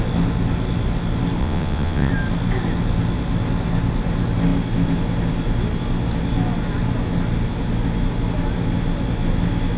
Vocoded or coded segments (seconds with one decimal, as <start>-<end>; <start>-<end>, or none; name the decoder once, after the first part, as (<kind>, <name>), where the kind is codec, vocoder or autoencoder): 1.4-2.1 (vocoder, WaveNeXt)